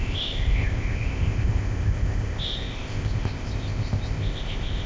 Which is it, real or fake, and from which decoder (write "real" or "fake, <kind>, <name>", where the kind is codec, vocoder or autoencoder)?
fake, codec, ZipCodec